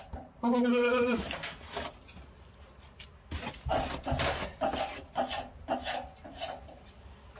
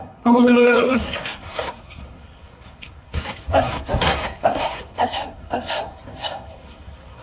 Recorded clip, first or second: first